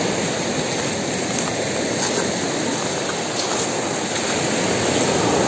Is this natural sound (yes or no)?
yes